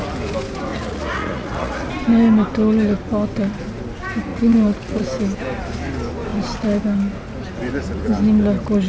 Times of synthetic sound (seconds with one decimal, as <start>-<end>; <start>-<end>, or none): 0.7-1.9; 4.3-5.0